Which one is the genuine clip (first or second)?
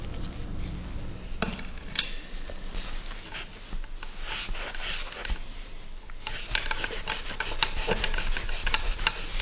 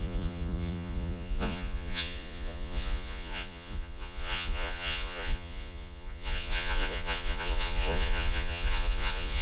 first